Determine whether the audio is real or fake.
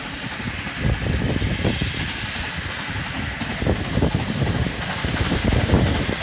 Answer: real